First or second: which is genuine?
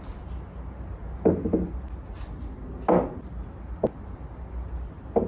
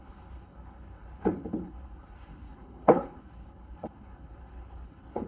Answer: first